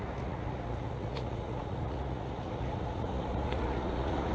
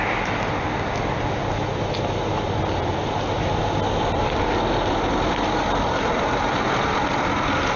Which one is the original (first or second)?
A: second